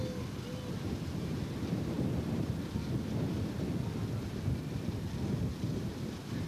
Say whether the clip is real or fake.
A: real